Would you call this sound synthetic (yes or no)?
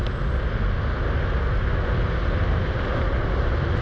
no